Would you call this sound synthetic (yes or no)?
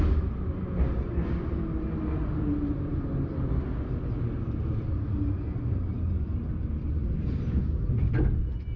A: no